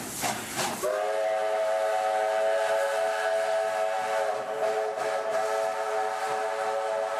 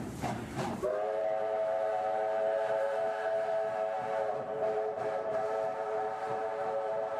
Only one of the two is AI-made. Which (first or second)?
second